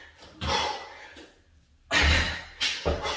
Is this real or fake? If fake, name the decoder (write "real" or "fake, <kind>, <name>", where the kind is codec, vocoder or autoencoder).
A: real